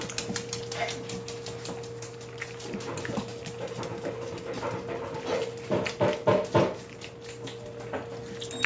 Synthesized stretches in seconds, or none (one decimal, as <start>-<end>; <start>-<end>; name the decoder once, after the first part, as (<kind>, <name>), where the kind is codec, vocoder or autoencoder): none

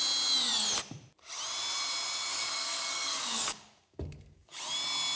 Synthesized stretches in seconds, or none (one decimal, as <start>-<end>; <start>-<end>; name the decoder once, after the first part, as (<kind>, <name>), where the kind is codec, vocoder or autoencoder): 2.3-4.6 (codec, DAC)

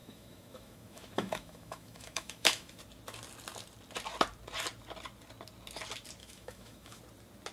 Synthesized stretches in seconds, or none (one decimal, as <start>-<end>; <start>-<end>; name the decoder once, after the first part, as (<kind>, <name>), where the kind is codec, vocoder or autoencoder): 0.0-2.8 (autoencoder, DAC-VAE); 6.2-7.0

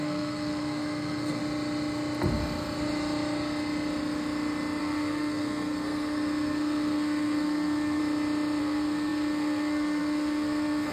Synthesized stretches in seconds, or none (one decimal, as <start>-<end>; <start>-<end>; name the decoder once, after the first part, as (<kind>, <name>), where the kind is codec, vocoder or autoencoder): 0.0-1.4 (codec, SNAC); 4.8-8.0; 8.6-10.9

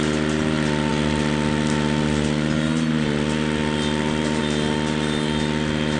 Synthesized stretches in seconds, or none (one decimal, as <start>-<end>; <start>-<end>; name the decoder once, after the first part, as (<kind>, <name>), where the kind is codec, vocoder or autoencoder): none

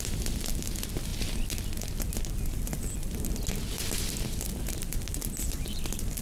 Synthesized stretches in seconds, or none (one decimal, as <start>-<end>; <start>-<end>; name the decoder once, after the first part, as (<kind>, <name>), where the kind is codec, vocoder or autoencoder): none

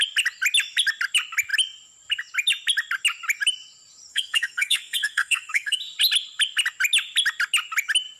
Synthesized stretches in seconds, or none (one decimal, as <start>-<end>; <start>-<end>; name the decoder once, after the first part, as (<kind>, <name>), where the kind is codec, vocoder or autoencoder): 4.1-5.8 (codec, SNAC)